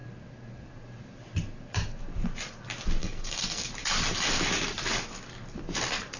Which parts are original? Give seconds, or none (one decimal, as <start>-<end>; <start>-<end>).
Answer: 0.0-3.0; 3.7-6.2